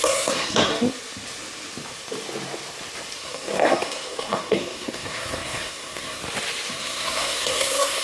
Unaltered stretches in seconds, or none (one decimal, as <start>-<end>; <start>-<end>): 0.7-3.2; 6.2-6.7